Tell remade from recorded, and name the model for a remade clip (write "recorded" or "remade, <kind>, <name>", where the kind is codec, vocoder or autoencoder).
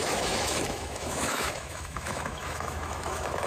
remade, autoencoder, DAC-VAE